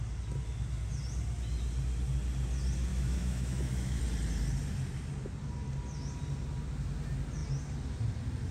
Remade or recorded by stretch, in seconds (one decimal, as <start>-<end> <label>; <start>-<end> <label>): 0.0-2.9 recorded; 2.9-4.0 remade; 4.0-8.5 recorded